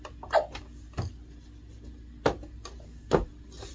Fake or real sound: real